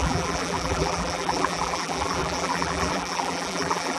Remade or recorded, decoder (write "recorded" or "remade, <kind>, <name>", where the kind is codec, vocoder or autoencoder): remade, vocoder, BigVGAN v2